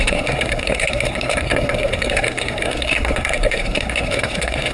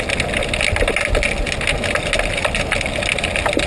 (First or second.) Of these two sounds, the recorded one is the second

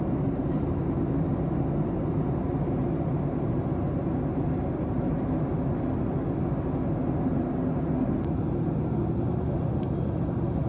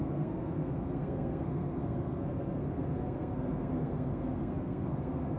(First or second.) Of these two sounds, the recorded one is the first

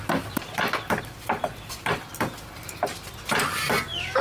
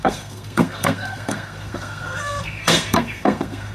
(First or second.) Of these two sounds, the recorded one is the first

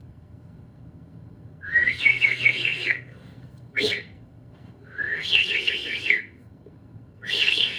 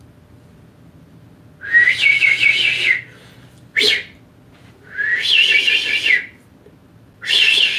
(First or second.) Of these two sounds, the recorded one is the second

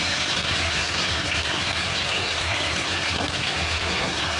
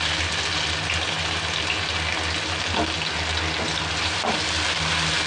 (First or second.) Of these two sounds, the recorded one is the second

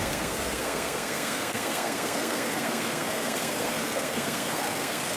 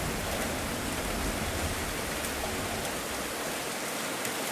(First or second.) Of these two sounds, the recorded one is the second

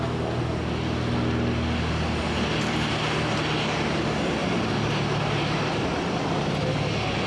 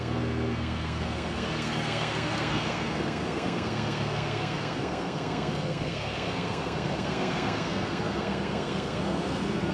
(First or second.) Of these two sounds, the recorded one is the first